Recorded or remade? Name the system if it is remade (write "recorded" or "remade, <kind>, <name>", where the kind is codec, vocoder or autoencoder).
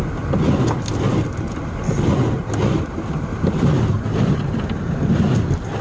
recorded